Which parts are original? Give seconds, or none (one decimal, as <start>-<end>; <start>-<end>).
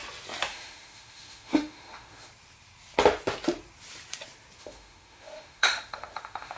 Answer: 0.0-0.5; 2.3-4.6